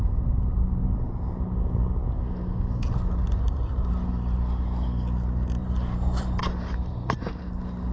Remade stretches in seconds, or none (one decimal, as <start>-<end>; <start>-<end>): 0.8-1.3; 3.3-3.9; 5.6-6.4